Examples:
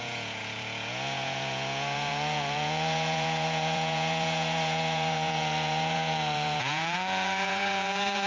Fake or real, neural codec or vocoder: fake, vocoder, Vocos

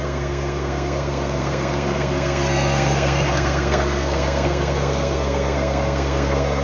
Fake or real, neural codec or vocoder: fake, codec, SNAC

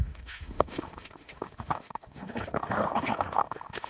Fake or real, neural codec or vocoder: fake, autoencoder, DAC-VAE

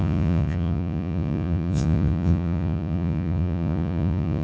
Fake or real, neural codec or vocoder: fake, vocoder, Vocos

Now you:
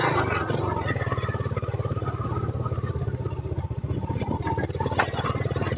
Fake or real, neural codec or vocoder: real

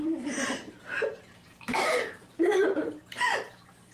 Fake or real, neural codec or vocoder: fake, vocoder, BigVGAN v2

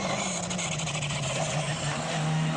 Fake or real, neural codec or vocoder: real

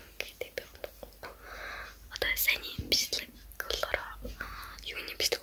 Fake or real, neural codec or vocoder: real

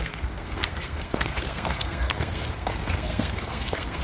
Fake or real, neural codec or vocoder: fake, codec, SNAC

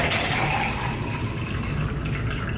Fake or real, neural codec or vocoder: real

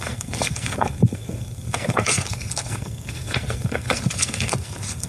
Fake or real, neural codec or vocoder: fake, codec, SNAC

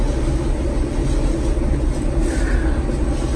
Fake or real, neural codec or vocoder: real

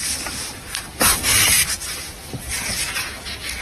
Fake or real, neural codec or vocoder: real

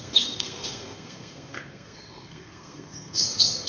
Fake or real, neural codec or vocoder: fake, codec, SNAC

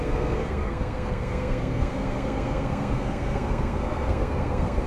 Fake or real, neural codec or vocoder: fake, codec, SNAC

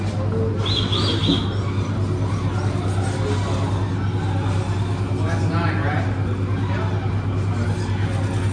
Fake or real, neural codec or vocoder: real